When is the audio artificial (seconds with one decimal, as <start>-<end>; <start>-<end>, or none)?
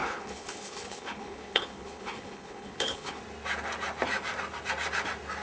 0.0-3.2